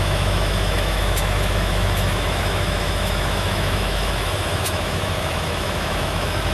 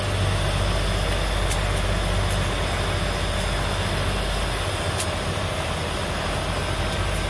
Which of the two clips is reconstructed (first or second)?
first